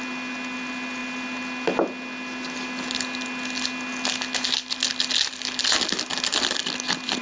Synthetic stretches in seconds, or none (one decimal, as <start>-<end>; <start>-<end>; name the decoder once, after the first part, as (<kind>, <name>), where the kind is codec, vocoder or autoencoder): none